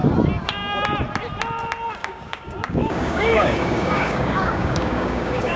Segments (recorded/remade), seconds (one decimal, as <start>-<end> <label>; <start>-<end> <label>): 0.0-2.0 recorded; 2.0-5.6 remade